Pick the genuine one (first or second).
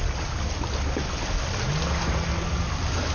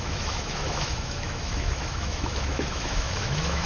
first